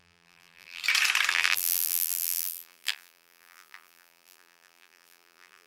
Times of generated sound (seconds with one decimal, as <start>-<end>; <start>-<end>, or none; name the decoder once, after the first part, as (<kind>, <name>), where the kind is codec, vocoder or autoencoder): 0.0-0.8 (vocoder, BigVGAN v2); 1.3-5.7